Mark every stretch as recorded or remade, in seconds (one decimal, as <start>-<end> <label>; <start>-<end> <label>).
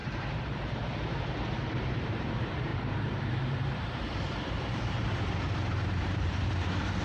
0.0-7.0 remade